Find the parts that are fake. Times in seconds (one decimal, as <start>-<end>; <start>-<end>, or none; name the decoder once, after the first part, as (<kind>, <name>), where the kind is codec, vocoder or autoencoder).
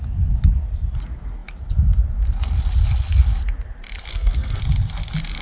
4.1-4.6 (codec, SNAC)